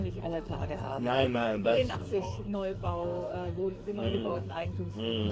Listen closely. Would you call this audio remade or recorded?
remade